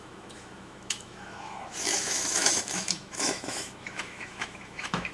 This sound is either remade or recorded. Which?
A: remade